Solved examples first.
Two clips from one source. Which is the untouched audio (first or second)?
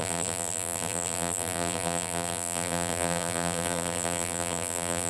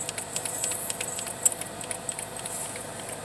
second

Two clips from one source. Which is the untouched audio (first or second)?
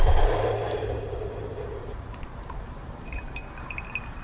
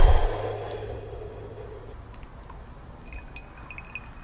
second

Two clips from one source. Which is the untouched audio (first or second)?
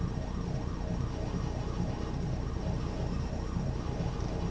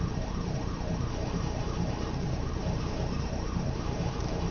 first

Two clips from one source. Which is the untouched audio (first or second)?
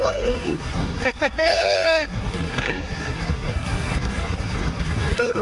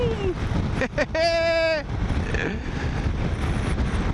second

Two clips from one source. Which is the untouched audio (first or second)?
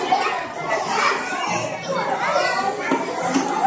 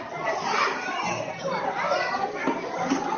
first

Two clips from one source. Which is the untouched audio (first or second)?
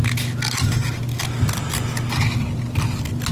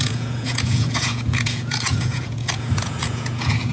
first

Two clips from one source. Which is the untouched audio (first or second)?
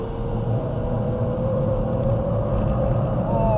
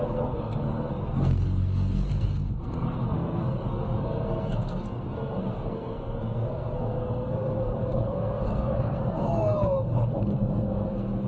first